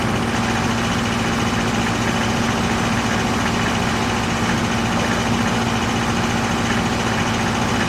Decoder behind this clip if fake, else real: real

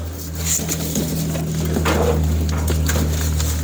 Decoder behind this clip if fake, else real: real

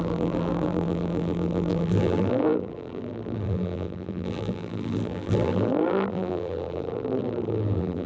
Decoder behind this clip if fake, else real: fake, vocoder, BigVGAN v2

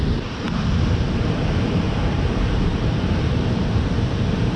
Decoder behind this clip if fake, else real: fake, vocoder, BigVGAN v2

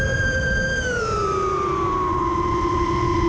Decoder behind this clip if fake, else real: fake, vocoder, BigVGAN v2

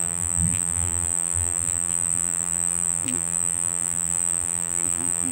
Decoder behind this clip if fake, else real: fake, vocoder, BigVGAN v2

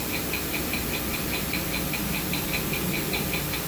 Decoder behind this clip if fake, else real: real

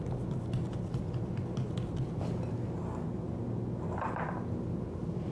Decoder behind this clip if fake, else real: real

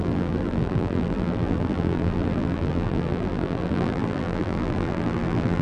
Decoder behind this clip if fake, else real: fake, vocoder, BigVGAN v2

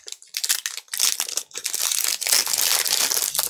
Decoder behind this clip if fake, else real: real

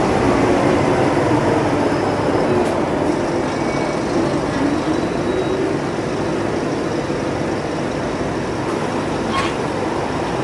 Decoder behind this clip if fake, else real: real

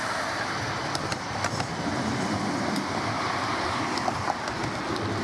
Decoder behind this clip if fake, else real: fake, vocoder, BigVGAN v2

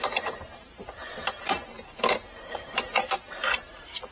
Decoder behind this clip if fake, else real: fake, vocoder, BigVGAN v2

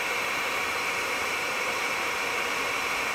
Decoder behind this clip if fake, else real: fake, vocoder, BigVGAN v2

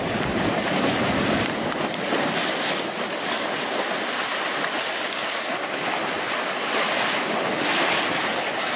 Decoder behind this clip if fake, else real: real